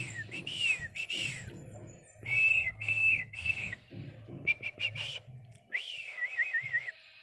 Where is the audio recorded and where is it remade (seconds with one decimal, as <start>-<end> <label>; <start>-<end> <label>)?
0.0-2.5 recorded; 2.5-3.9 remade; 3.9-7.2 recorded